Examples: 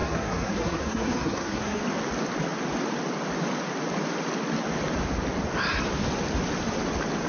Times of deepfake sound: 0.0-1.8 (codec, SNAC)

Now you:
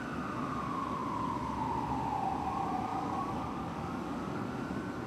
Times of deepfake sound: 2.9-4.5 (codec, DAC)

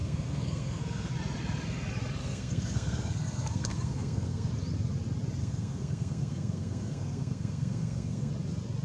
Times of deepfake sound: 0.0-1.1 (codec, SNAC); 2.2-4.5; 5.4-8.3

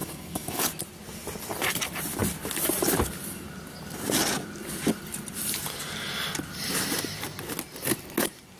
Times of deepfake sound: 0.0-0.7 (codec, DAC)